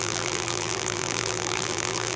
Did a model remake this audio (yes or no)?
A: yes